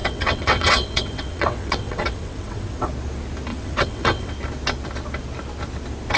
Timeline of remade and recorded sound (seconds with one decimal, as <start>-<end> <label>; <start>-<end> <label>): 0.0-2.9 remade; 2.9-3.5 recorded; 3.5-4.3 remade; 4.3-6.2 recorded